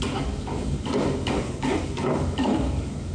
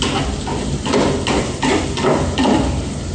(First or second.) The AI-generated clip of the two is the first